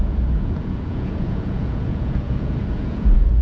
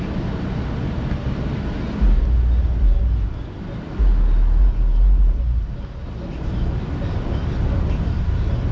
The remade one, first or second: first